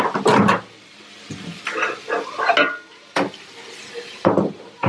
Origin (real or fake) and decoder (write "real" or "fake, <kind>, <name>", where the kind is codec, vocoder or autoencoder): real